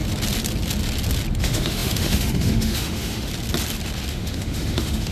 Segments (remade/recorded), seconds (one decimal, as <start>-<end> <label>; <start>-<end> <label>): 0.0-1.4 recorded; 1.4-3.3 remade; 3.3-4.1 recorded; 4.1-5.1 remade